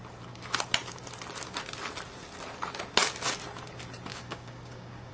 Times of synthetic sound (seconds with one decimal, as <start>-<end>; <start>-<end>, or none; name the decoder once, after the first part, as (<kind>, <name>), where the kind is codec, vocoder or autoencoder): 4.1-5.1 (codec, DAC)